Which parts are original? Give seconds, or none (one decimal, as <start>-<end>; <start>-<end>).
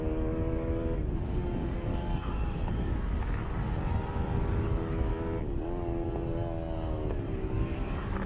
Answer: 5.1-7.1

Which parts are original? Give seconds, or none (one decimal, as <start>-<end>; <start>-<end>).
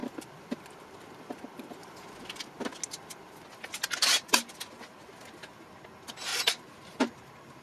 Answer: 0.7-1.8; 2.4-6.3; 7.1-7.6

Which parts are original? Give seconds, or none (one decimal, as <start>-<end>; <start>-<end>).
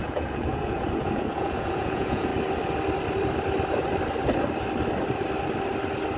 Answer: 2.3-6.2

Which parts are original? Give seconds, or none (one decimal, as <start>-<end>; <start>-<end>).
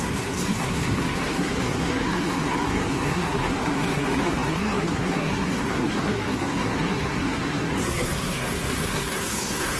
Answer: none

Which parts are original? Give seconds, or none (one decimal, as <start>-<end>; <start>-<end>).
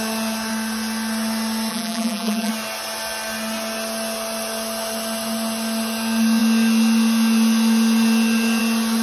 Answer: 0.0-1.7; 2.5-9.0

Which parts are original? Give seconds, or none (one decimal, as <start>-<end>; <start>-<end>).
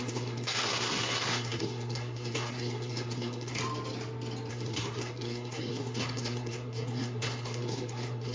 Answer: 3.6-4.5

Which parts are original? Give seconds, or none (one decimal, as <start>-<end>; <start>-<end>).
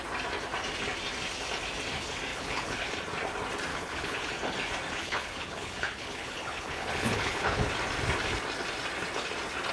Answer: 0.0-2.3; 2.9-3.7; 4.3-5.0; 7.7-9.7